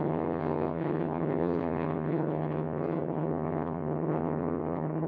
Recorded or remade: remade